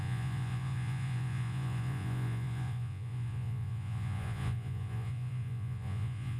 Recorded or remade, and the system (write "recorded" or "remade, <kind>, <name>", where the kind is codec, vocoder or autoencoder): remade, vocoder, Vocos